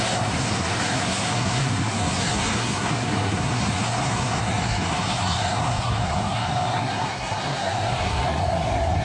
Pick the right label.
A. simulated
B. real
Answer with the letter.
A